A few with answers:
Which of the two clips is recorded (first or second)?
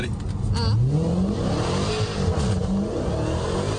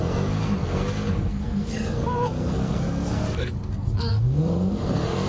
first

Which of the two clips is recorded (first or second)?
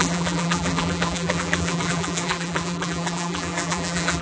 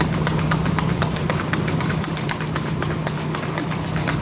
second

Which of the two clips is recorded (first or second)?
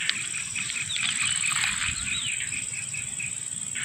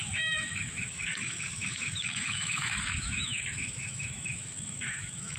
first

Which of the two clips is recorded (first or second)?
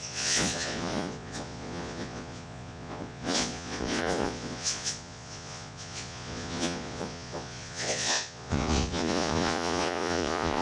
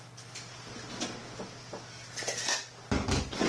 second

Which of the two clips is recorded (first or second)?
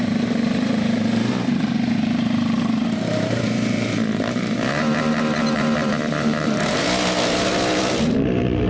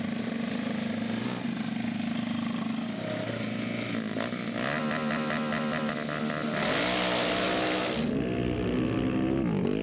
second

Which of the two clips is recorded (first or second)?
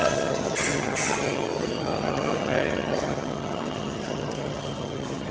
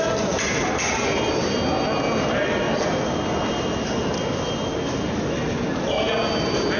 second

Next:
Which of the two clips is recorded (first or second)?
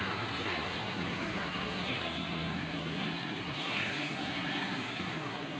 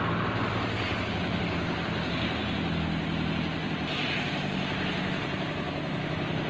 second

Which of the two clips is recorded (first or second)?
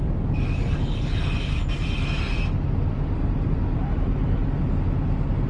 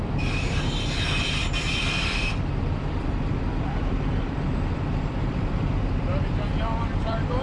first